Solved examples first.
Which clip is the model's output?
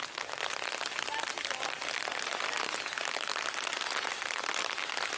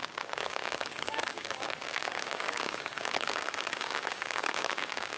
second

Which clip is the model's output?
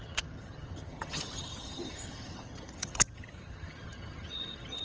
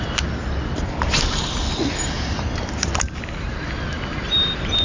first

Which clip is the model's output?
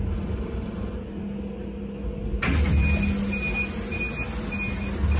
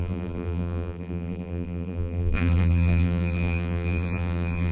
second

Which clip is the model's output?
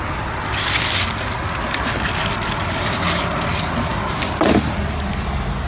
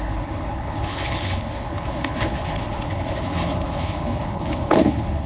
second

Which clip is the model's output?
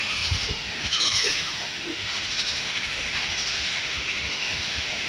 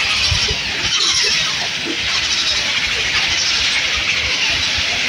first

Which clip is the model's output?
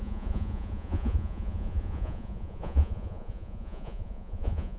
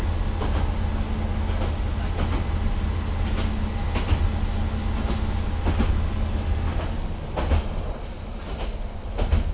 first